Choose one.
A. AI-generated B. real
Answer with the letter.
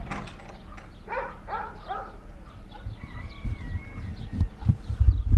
B